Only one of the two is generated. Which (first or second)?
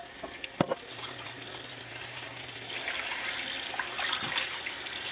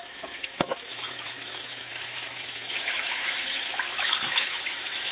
second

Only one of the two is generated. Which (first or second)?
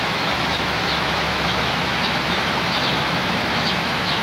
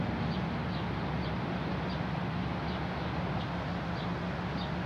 first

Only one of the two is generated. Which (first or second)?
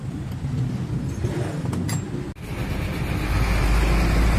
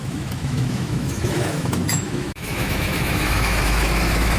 second